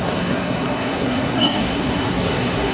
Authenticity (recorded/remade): remade